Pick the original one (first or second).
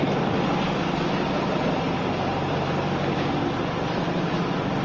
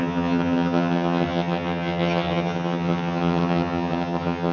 first